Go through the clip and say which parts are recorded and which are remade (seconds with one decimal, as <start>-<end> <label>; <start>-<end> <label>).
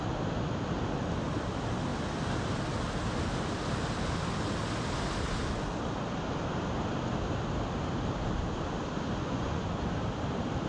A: 0.0-9.2 recorded; 9.2-9.8 remade; 9.8-10.7 recorded